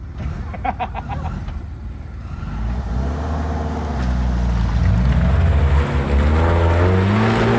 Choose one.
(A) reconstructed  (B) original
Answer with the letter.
B